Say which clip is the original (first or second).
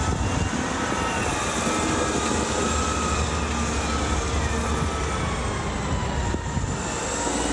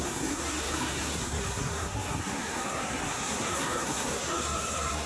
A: first